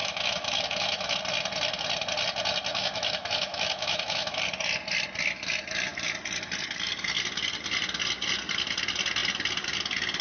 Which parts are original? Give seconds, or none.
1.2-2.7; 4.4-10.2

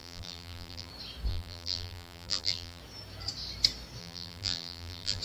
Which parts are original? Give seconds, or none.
0.9-1.3; 2.8-4.0